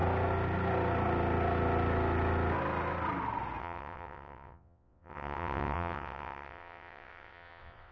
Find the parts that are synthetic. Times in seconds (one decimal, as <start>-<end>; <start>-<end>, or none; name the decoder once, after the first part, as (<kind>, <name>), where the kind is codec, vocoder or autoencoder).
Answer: 3.6-7.9 (vocoder, WaveNeXt)